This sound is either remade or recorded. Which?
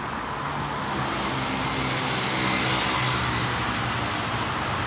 recorded